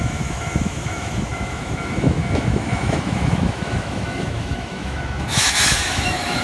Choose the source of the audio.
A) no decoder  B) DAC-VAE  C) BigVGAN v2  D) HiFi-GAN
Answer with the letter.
B